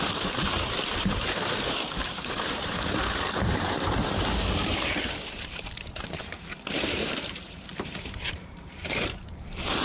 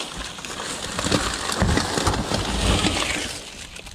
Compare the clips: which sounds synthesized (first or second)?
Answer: first